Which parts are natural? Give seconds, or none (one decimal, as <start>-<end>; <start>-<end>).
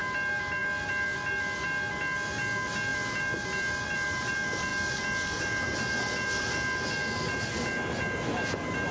0.0-8.9